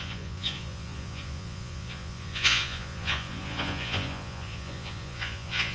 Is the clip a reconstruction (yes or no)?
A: yes